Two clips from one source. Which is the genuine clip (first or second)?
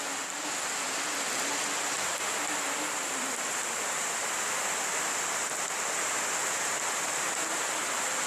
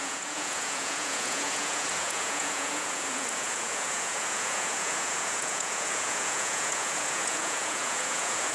first